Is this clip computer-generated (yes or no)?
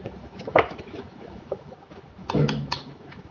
yes